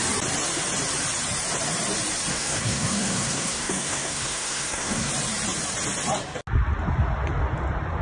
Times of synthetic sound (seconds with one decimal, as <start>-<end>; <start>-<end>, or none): 2.3-5.1